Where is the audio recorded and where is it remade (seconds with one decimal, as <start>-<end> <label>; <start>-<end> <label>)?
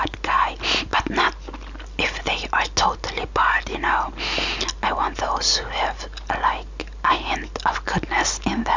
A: 0.0-8.8 recorded